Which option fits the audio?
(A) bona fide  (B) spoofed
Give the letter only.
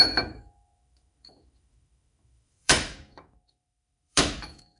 B